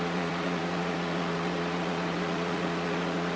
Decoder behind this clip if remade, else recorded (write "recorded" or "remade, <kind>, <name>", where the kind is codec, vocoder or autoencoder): remade, vocoder, Vocos